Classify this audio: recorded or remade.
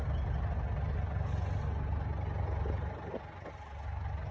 recorded